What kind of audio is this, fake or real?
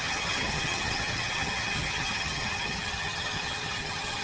fake